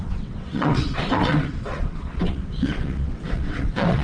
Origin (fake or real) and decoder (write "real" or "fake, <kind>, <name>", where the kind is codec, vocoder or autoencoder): fake, vocoder, WaveNeXt